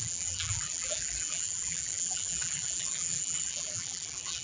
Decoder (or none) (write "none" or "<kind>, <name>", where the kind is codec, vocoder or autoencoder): vocoder, BigVGAN v2